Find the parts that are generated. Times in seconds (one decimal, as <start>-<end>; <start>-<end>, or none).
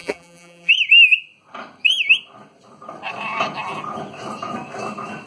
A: 0.0-0.7